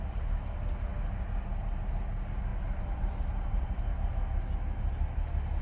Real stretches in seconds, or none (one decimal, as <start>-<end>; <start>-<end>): 0.0-2.5; 4.1-5.6